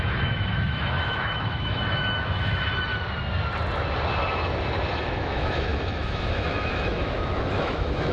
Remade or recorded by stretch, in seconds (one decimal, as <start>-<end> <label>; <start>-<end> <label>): 0.0-2.9 remade; 2.9-5.0 recorded; 5.0-8.1 remade